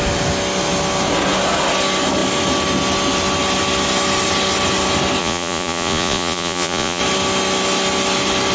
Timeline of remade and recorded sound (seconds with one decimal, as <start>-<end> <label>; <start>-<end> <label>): 0.0-5.2 recorded; 5.2-7.0 remade; 7.0-8.5 recorded